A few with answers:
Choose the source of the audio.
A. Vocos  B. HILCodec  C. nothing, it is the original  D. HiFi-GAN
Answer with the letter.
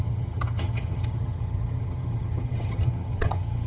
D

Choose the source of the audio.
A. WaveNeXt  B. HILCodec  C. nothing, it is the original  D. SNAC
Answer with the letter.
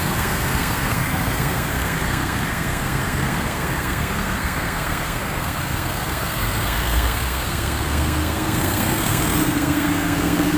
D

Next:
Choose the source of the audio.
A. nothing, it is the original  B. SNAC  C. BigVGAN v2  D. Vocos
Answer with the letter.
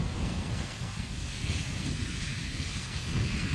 B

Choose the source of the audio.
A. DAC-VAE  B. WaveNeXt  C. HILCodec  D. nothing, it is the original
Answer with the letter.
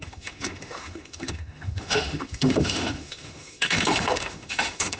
A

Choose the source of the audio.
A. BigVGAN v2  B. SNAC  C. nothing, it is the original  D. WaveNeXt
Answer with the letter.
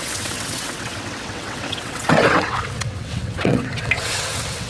D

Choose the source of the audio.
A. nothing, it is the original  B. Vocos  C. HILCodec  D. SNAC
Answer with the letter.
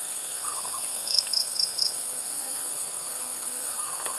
D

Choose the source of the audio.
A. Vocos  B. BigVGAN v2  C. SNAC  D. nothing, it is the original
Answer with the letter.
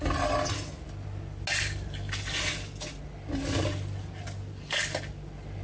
D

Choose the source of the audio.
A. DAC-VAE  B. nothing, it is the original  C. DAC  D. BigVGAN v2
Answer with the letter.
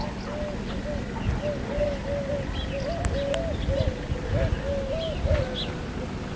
B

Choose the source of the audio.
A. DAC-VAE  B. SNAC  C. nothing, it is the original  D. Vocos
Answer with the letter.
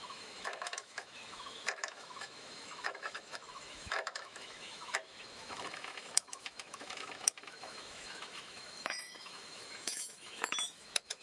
A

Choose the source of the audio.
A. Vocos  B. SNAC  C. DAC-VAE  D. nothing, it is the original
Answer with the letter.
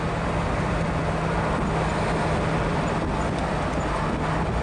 D